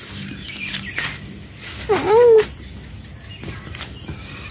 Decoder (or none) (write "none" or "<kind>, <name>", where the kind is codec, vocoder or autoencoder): none